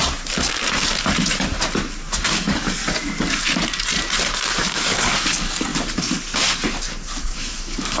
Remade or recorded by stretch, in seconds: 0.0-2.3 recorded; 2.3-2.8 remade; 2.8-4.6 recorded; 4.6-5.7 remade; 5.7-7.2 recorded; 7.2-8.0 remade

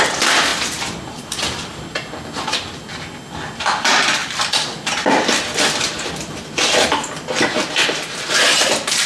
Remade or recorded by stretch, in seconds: 0.0-9.1 recorded

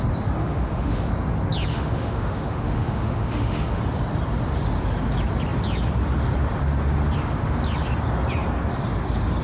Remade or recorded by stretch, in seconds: 0.0-0.4 recorded; 0.4-1.1 remade; 1.1-1.7 recorded; 1.7-3.8 remade; 3.8-9.4 recorded

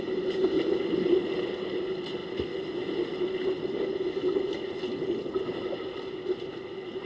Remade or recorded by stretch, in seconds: 0.0-7.1 recorded

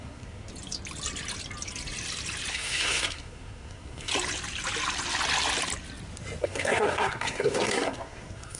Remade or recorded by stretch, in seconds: 0.0-0.5 remade; 0.5-2.5 recorded; 2.5-4.1 remade; 4.1-6.4 recorded; 6.4-8.6 remade

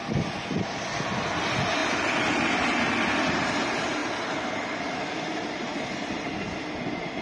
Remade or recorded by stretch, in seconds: 0.0-7.2 recorded